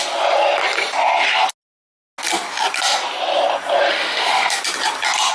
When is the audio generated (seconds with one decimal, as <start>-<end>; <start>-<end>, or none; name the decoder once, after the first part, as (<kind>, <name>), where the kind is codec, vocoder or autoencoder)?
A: 3.9-4.6 (autoencoder, DAC-VAE)